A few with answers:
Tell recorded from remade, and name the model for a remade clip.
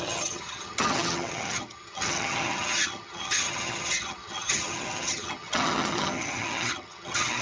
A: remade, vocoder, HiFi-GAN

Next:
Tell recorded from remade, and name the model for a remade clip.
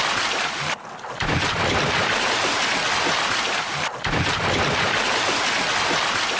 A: recorded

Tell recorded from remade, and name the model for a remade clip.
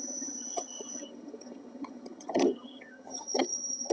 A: remade, vocoder, HiFi-GAN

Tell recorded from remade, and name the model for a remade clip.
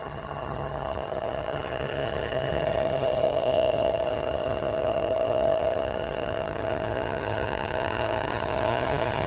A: remade, vocoder, HiFi-GAN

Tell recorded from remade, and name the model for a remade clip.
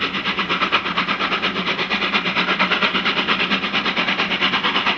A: recorded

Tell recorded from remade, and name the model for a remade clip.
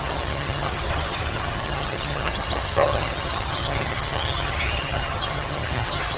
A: remade, vocoder, HiFi-GAN